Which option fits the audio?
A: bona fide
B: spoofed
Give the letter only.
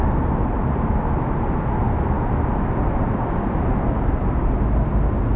A